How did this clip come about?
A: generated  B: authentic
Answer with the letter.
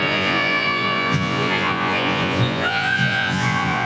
A